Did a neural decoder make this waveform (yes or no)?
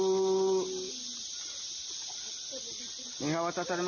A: no